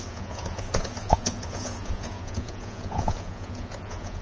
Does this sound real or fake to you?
fake